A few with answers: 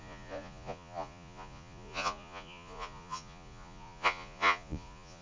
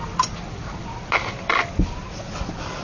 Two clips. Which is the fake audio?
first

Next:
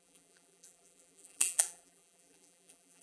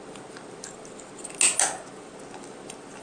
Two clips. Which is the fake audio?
first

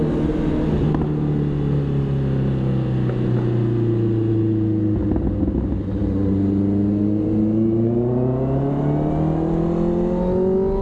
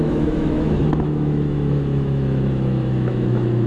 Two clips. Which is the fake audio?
second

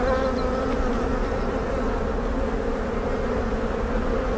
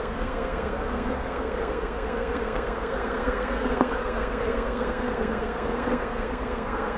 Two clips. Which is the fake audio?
second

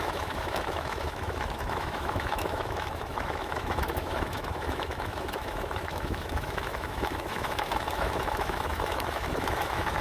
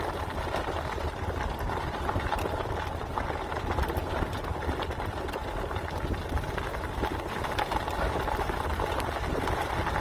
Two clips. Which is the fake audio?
first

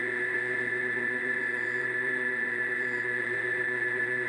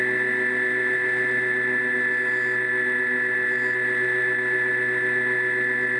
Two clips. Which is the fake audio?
first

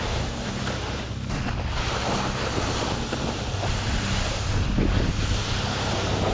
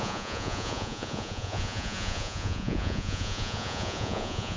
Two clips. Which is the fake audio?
second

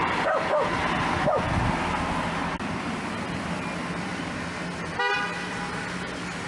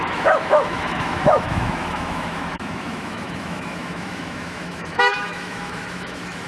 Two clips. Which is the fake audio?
second